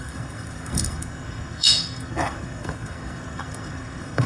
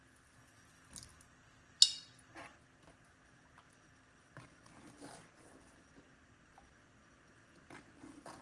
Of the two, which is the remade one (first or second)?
first